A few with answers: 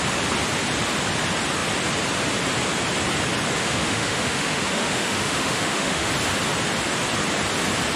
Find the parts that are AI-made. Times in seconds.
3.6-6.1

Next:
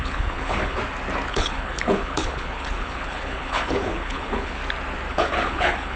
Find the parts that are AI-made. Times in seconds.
0.0-0.8; 1.3-4.6; 5.1-6.0

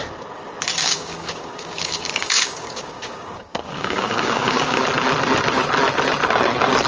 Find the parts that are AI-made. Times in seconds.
0.7-4.8

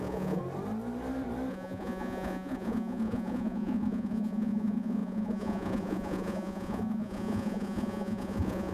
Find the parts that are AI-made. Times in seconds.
0.0-0.4; 1.5-8.7